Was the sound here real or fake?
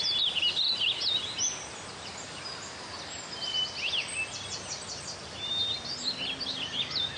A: real